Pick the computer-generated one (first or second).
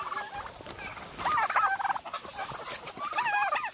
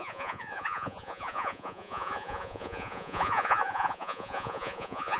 second